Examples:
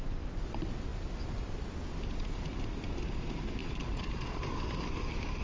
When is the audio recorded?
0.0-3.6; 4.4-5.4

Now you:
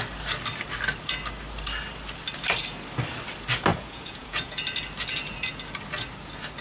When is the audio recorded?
0.0-3.7; 4.6-6.6

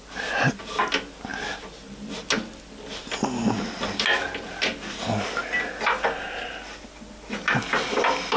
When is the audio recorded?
0.0-8.4